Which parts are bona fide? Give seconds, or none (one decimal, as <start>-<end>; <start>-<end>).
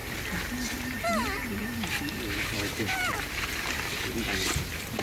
0.0-1.6; 4.0-5.0